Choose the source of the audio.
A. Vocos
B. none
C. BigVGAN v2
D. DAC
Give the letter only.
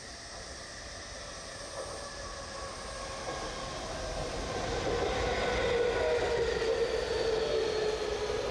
B